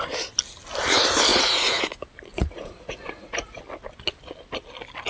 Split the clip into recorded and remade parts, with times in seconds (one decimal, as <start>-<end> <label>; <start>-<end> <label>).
0.0-1.3 recorded; 1.3-1.8 remade; 1.8-2.3 recorded; 2.3-3.6 remade; 3.6-5.1 recorded